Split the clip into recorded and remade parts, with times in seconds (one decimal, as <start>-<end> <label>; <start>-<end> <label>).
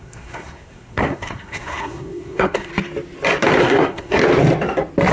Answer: 0.0-2.7 remade; 2.7-3.6 recorded; 3.6-4.2 remade; 4.2-5.1 recorded